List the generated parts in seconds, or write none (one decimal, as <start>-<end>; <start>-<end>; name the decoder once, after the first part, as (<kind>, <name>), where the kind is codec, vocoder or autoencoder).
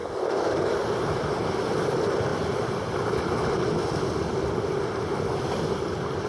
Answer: 0.0-0.7 (codec, DAC)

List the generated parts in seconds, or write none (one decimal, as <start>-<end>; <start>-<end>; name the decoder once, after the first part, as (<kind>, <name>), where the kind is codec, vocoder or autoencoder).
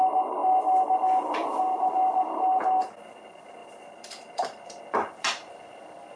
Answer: 3.6-4.8 (vocoder, BigVGAN v2)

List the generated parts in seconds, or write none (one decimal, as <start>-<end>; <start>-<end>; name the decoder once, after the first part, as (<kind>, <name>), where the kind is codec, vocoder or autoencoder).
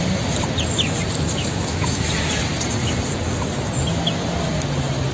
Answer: 1.3-2.3 (autoencoder, DAC-VAE)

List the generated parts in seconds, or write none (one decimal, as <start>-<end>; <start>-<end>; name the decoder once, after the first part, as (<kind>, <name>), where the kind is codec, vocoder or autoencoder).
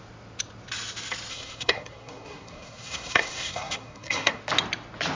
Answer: 1.3-4.4 (codec, SNAC)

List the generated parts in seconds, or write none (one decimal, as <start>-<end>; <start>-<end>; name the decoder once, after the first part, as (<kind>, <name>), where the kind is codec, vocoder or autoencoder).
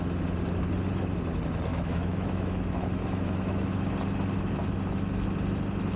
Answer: 1.7-3.7 (autoencoder, DAC-VAE)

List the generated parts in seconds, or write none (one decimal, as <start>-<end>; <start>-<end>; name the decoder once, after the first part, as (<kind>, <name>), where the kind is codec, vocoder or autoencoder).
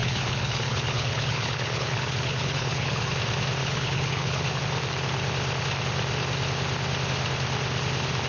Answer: 0.0-3.1 (codec, HILCodec); 3.6-4.6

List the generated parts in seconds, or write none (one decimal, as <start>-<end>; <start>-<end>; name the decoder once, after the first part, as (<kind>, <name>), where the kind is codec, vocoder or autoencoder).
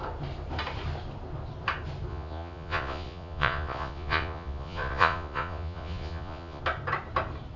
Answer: 2.1-6.6 (vocoder, Vocos)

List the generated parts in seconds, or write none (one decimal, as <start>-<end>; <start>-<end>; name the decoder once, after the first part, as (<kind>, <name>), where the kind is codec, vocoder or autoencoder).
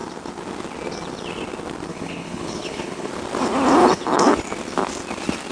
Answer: 1.9-3.1 (codec, HILCodec); 3.8-4.4